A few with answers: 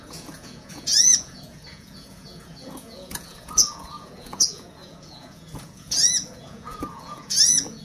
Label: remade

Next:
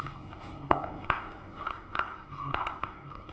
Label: remade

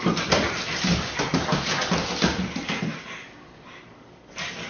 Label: recorded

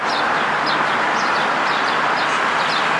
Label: recorded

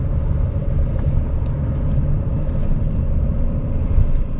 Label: recorded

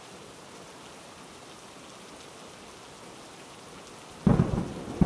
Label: recorded